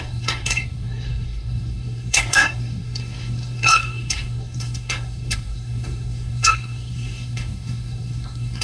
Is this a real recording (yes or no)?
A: no